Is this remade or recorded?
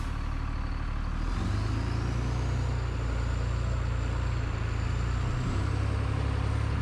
recorded